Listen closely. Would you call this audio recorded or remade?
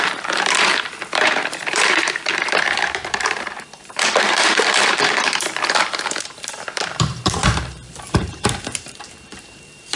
remade